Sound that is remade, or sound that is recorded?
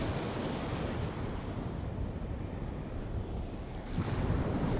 recorded